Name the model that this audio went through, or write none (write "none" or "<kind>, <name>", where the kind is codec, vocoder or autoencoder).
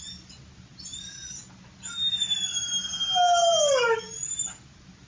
none